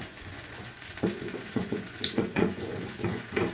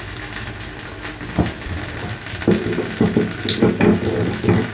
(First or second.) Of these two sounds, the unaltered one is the second